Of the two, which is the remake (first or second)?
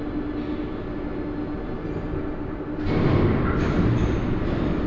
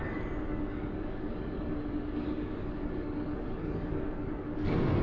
second